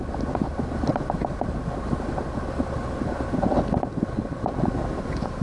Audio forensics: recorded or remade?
recorded